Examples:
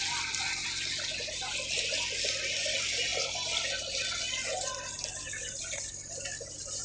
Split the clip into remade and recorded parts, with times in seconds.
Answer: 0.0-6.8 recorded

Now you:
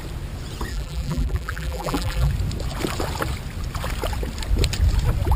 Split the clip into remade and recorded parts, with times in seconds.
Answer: 0.0-0.7 recorded; 0.7-2.3 remade; 2.3-5.4 recorded